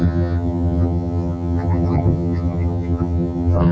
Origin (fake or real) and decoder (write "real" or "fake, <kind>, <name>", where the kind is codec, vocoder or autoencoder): fake, vocoder, HiFi-GAN